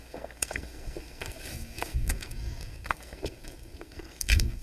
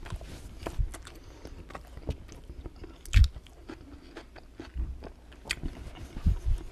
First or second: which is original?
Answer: second